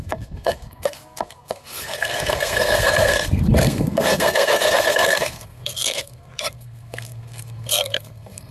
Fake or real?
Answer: fake